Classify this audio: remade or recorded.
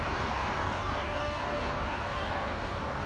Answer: remade